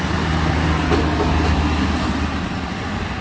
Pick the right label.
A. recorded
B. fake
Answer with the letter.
A